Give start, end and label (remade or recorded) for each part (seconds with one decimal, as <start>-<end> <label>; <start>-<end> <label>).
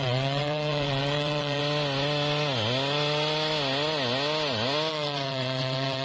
0.0-1.6 remade; 1.6-4.9 recorded; 4.9-6.0 remade